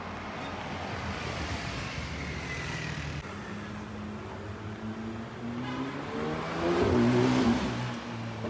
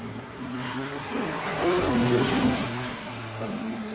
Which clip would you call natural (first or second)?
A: first